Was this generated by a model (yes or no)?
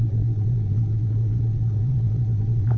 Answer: yes